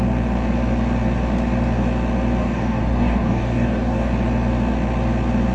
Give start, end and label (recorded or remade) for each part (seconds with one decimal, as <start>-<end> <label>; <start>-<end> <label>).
0.0-2.4 recorded; 2.4-4.1 remade; 4.1-5.5 recorded